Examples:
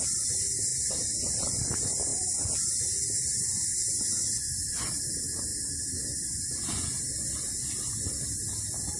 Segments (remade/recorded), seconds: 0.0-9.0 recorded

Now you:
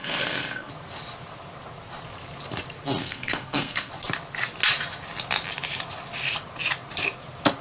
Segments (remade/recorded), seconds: 0.0-0.7 remade; 0.7-3.0 recorded; 3.0-3.9 remade; 3.9-7.6 recorded

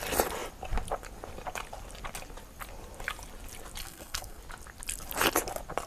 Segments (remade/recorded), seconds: 0.0-3.8 recorded; 3.8-4.4 remade; 4.4-5.9 recorded

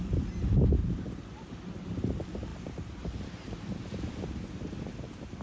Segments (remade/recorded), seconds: 0.0-5.4 recorded

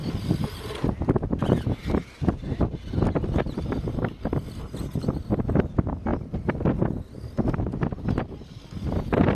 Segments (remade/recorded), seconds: 0.0-9.3 recorded

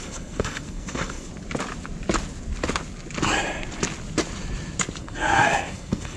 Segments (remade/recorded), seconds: 0.0-1.3 remade; 1.3-5.0 recorded; 5.0-6.2 remade

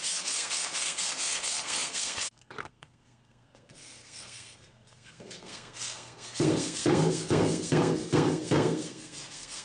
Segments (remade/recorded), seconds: 0.0-9.6 remade